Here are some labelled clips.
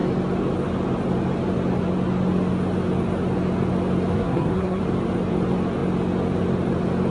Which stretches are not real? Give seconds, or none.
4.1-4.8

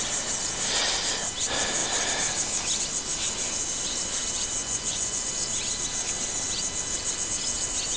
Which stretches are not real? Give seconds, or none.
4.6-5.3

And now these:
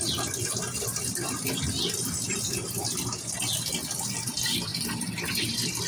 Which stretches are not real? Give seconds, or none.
none

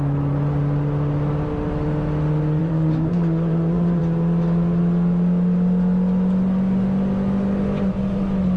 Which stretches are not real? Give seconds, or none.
2.6-4.0